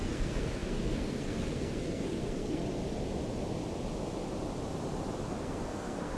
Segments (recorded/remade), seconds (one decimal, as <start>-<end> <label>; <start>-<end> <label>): 0.0-2.8 remade; 2.8-5.4 recorded; 5.4-6.2 remade